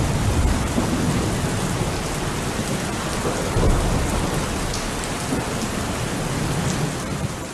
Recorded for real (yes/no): yes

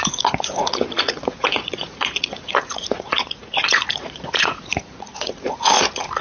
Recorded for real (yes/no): no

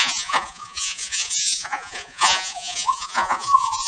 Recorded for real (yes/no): no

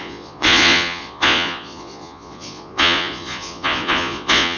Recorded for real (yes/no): no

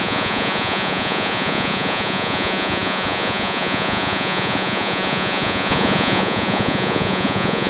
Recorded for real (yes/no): no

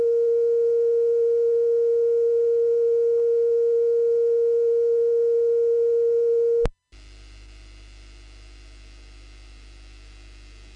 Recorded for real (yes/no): yes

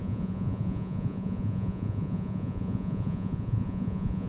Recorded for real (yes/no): no